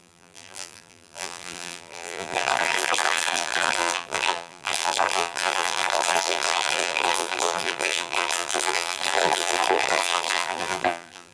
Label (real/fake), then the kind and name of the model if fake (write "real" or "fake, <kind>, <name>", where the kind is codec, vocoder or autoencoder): fake, vocoder, BigVGAN v2